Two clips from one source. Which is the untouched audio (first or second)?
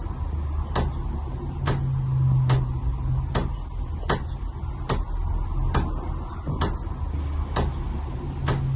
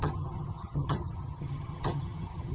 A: first